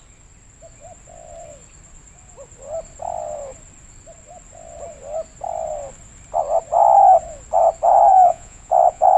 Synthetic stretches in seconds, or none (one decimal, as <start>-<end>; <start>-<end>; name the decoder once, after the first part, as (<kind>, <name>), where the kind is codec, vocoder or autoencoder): 8.1-9.2 (vocoder, Vocos)